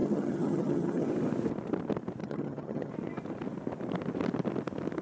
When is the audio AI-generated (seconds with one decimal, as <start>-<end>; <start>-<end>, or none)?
0.0-1.1; 2.2-2.9